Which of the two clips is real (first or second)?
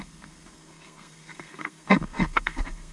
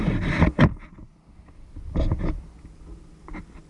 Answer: second